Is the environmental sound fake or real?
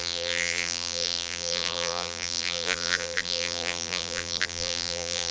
fake